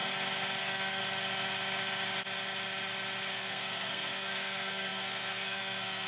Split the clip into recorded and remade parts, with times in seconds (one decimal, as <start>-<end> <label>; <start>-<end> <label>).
0.0-0.6 recorded; 0.6-1.0 remade; 1.0-3.3 recorded; 3.3-6.1 remade